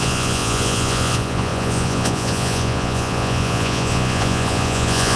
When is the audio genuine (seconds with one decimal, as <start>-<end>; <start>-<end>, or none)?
none